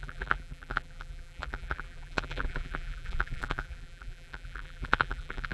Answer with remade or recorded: remade